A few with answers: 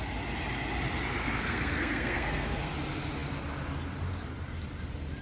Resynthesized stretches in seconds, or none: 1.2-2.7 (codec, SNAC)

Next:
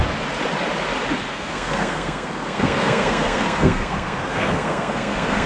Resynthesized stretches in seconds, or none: 1.3-5.5 (codec, SNAC)

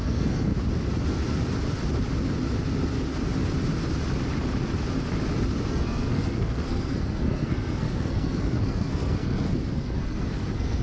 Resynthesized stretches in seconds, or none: 0.0-0.5 (codec, SNAC); 5.7-10.8